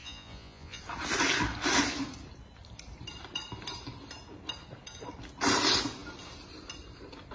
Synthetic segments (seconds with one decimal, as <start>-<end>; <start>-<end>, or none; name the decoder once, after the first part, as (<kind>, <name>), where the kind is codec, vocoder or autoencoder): 0.0-0.8 (vocoder, Vocos)